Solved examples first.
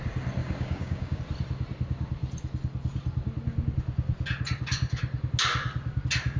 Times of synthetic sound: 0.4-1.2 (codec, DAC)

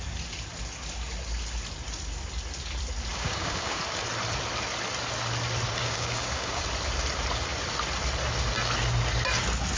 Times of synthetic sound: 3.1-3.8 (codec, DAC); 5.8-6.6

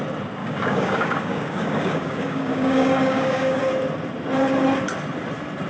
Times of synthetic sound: 0.4-3.6 (codec, DAC)